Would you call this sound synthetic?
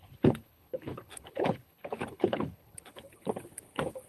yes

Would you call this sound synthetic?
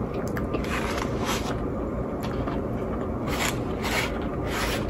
no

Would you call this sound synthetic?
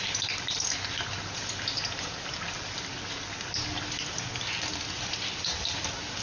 no